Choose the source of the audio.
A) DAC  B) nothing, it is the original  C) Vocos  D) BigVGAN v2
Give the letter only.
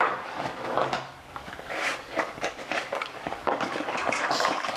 A